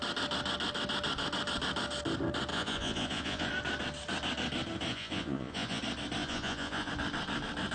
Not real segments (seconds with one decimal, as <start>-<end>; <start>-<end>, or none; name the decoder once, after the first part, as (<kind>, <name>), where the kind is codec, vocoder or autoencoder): 2.5-3.5 (vocoder, Vocos); 4.9-5.8; 6.2-6.9

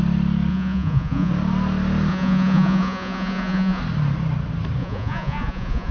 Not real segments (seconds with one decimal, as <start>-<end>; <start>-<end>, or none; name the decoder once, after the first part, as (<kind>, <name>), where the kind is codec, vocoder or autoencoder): 0.5-1.3 (vocoder, Vocos); 2.1-3.8; 4.8-5.9

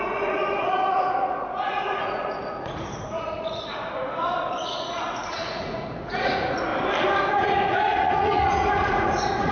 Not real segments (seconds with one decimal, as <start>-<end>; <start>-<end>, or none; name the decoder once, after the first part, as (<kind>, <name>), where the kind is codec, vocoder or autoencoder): 0.0-6.7 (vocoder, Vocos); 7.3-9.5

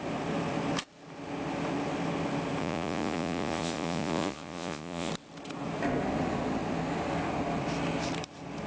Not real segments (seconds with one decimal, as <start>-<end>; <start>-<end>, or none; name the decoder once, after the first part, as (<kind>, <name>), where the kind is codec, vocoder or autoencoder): 2.6-5.1 (vocoder, Vocos)